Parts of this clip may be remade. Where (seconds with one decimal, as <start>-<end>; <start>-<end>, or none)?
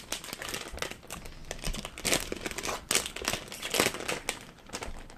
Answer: none